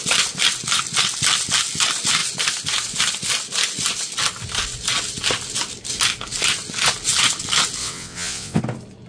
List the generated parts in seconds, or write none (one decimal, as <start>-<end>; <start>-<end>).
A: 7.8-8.6